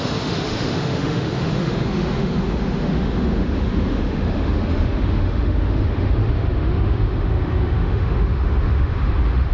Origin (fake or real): fake